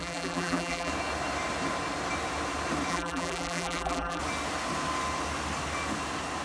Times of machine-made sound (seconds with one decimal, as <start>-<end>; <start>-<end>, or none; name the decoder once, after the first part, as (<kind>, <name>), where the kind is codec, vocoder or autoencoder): 0.0-0.9 (vocoder, BigVGAN v2); 2.9-4.2